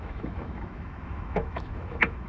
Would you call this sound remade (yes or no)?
yes